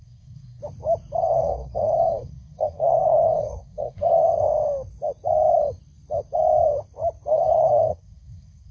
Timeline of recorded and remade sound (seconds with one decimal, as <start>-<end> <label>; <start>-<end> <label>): 0.0-0.6 remade; 0.6-1.2 recorded; 1.2-4.4 remade; 4.4-7.3 recorded; 7.3-8.7 remade